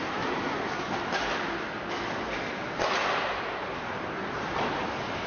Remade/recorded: recorded